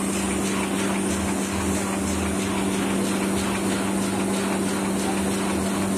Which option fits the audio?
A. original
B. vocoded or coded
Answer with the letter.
A